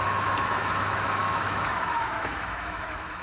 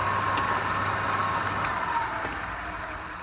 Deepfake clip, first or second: first